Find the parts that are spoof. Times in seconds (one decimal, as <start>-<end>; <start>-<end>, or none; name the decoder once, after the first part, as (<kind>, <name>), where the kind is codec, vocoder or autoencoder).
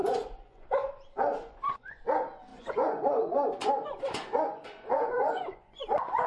0.0-0.9 (vocoder, Vocos); 1.3-2.0; 2.5-6.3